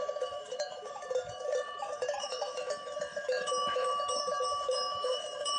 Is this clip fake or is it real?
fake